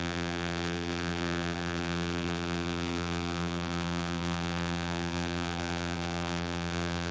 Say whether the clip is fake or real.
fake